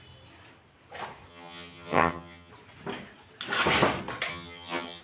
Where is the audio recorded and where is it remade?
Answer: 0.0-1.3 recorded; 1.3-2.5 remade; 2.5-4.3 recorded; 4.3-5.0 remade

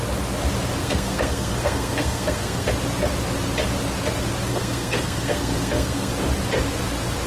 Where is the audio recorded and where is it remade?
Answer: 0.0-0.8 recorded; 0.8-2.7 remade; 2.7-4.5 recorded; 4.5-6.1 remade; 6.1-7.3 recorded

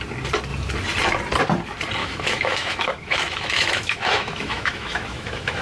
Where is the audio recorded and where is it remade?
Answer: 0.0-2.0 recorded; 2.0-5.6 remade

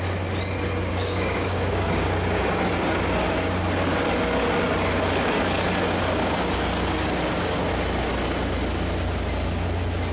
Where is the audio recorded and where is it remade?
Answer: 0.0-0.9 recorded; 0.9-2.7 remade; 2.7-10.1 recorded

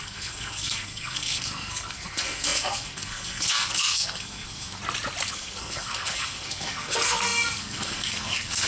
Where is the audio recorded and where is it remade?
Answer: 0.0-4.8 remade; 4.8-5.3 recorded; 5.3-8.7 remade